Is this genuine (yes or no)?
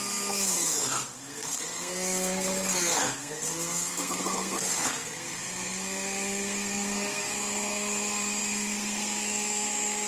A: no